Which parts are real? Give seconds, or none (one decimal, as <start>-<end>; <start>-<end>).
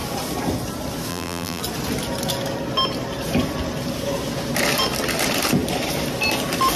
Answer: 0.0-1.1; 1.6-6.8